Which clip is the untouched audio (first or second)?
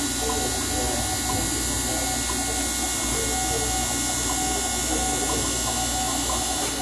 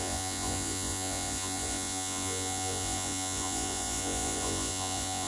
first